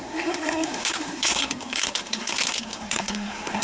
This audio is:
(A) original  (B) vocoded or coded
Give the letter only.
B